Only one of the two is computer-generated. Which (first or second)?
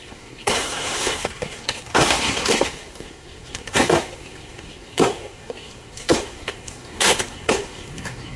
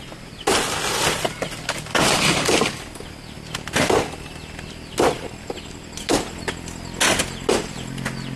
first